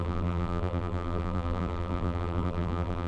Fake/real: fake